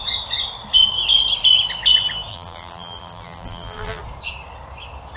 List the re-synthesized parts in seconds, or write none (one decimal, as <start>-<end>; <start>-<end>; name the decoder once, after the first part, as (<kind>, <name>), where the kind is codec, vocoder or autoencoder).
2.3-4.0 (vocoder, BigVGAN v2)